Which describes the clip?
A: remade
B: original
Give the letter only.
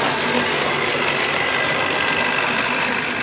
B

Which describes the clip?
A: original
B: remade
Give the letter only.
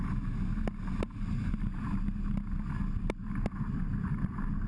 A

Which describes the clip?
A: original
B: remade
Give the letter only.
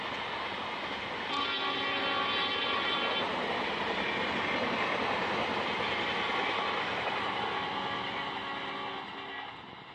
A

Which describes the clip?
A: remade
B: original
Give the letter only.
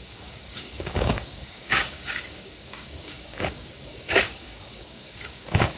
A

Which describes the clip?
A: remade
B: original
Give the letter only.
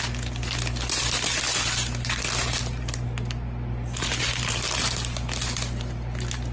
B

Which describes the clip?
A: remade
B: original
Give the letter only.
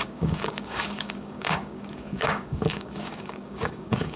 A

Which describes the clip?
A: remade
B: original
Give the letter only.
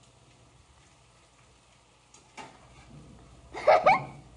B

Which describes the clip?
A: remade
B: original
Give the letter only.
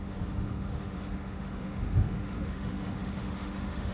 A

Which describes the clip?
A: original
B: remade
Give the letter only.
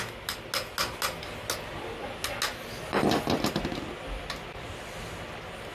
A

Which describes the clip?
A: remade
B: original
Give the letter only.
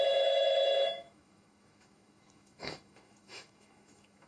A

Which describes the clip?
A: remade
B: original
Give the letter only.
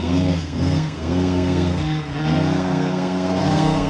A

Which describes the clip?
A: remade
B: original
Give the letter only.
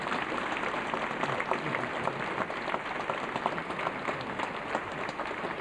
B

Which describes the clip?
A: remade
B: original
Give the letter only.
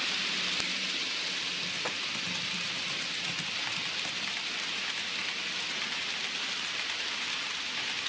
B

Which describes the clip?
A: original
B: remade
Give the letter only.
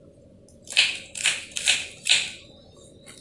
A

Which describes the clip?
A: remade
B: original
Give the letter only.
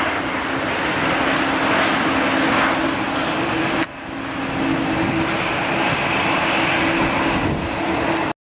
B